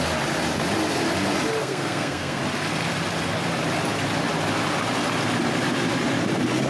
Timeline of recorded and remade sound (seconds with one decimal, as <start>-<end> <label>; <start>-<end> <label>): 0.0-1.6 recorded; 1.6-2.4 remade; 2.4-6.7 recorded